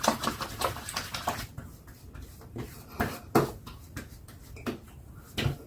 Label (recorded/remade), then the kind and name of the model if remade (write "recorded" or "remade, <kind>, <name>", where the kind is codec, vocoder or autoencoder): recorded